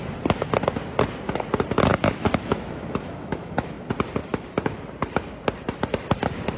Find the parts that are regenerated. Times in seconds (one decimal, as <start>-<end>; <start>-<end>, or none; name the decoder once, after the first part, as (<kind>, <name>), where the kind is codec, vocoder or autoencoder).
1.9-3.8 (autoencoder, DAC-VAE); 4.2-4.7